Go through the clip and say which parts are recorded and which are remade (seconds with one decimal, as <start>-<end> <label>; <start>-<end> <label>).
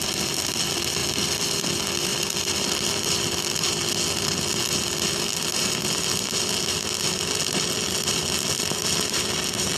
0.0-1.0 recorded; 1.0-1.6 remade; 1.6-2.1 recorded; 2.1-3.8 remade; 3.8-9.8 recorded